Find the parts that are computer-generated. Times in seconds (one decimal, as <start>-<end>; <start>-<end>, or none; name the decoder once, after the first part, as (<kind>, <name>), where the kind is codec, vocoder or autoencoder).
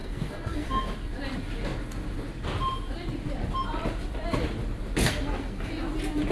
0.0-0.9 (codec, SNAC); 5.0-5.7